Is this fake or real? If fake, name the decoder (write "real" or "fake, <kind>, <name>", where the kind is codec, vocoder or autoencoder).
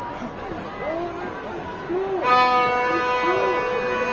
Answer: real